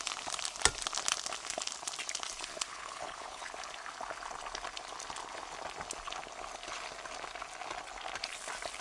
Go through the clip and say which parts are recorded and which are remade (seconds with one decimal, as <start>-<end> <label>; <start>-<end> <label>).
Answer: 0.0-2.7 recorded; 2.7-3.4 remade; 3.4-8.8 recorded